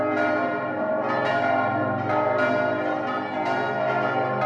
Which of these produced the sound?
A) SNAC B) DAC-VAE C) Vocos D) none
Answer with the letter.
D